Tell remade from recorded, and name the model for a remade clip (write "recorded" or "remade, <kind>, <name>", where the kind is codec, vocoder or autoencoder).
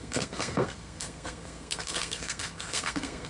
remade, codec, SNAC